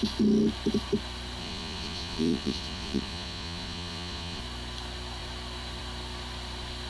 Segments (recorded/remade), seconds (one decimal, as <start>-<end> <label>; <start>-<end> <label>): 0.0-1.4 recorded; 1.4-4.4 remade; 4.4-6.9 recorded